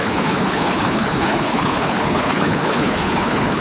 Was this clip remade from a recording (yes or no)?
yes